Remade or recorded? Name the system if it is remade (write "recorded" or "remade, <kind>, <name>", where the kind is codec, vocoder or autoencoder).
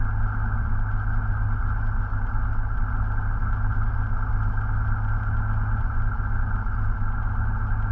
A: recorded